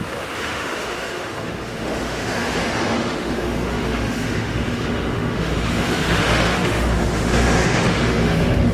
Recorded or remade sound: remade